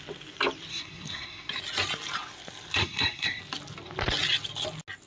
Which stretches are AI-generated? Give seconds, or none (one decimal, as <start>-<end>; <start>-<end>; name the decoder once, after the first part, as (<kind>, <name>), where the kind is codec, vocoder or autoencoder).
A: 0.7-1.5 (codec, SNAC); 2.8-3.4